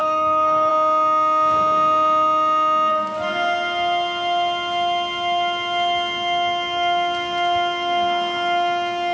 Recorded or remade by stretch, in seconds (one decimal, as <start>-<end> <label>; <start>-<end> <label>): 0.0-0.7 remade; 0.7-9.1 recorded